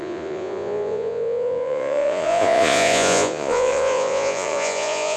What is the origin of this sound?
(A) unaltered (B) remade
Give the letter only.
B